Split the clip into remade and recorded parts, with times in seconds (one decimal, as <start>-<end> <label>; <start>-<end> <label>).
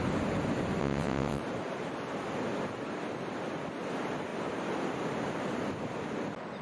0.0-0.8 recorded; 0.8-1.4 remade; 1.4-6.6 recorded